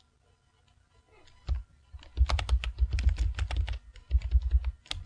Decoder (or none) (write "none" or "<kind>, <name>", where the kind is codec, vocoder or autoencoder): none